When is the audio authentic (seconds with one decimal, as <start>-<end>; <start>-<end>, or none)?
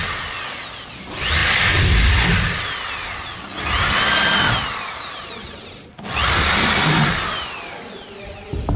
0.0-8.8